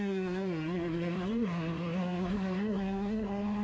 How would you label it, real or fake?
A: fake